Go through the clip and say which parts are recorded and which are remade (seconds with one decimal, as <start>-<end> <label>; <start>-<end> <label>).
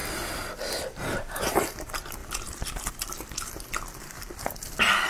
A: 0.0-5.1 recorded